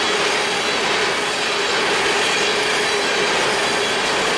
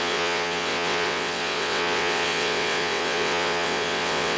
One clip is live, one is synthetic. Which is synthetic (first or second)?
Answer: second